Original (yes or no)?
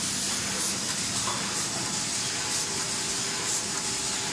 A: yes